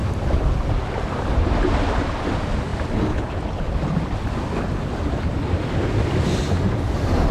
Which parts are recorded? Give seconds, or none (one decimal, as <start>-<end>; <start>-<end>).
2.2-7.3